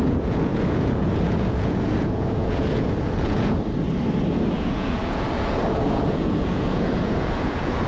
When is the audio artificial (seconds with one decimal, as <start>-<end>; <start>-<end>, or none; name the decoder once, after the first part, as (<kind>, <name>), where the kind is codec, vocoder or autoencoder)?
0.0-3.6 (vocoder, Vocos); 4.5-7.9